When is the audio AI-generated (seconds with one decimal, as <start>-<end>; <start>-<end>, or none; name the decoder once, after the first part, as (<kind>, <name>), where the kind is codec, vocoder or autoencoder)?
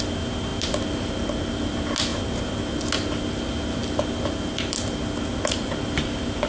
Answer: none